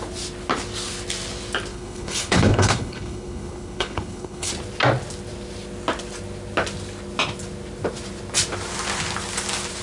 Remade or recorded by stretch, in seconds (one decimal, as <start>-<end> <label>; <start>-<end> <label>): 0.0-1.7 recorded; 1.7-4.5 remade; 4.5-9.8 recorded